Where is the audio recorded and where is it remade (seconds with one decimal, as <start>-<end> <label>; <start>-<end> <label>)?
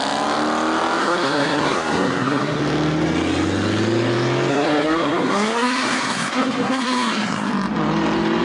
0.0-1.0 recorded; 1.0-2.6 remade; 2.6-4.5 recorded; 4.5-7.5 remade; 7.5-8.4 recorded